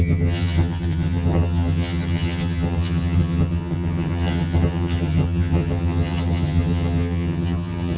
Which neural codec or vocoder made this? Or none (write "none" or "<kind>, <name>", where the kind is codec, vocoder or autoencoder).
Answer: vocoder, HiFi-GAN